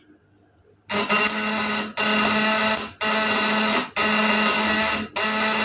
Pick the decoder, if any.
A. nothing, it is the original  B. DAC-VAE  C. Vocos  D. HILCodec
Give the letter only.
A